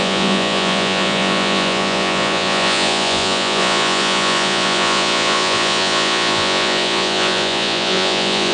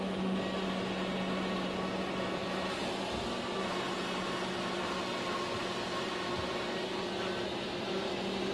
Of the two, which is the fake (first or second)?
first